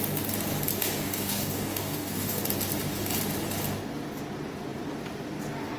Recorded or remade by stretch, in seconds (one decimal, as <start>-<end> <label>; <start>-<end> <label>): 0.0-0.8 recorded; 0.8-2.4 remade; 2.4-5.8 recorded